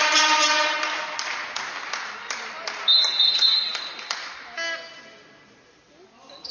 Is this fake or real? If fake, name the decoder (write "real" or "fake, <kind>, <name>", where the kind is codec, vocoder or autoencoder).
real